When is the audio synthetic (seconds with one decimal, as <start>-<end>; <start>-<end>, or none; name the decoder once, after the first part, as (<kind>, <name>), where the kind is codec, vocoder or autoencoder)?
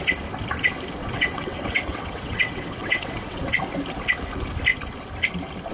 1.0-3.5 (vocoder, WaveNeXt)